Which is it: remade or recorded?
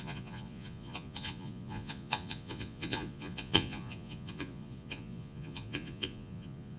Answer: remade